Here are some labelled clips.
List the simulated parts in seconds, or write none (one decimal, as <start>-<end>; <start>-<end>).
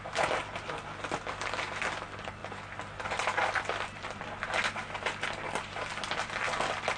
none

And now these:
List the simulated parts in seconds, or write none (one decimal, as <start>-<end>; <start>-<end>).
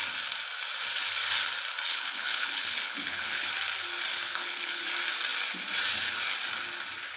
1.9-3.5; 4.1-4.8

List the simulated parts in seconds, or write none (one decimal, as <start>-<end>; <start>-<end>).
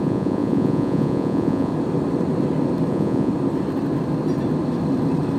0.0-1.7; 2.9-3.3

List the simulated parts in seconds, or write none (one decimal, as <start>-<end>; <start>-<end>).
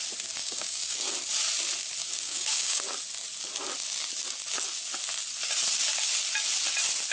0.4-1.1; 2.0-2.8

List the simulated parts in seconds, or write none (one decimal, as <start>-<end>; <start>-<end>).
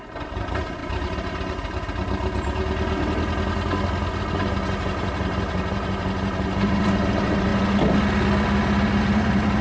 0.0-0.8; 4.2-7.5; 9.0-9.6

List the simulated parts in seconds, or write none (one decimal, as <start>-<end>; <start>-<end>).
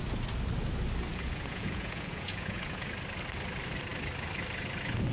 1.1-2.9